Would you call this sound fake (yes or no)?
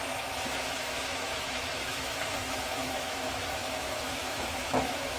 yes